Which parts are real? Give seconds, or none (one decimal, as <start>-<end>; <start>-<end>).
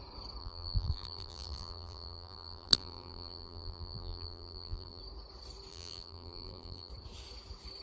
0.0-0.4; 5.0-5.7; 6.9-7.8